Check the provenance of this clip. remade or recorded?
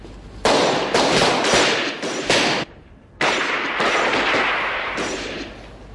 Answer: recorded